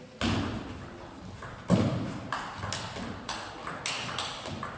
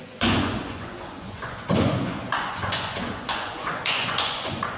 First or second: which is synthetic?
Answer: second